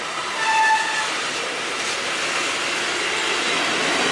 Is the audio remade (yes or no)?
no